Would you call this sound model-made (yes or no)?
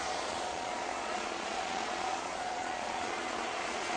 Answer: yes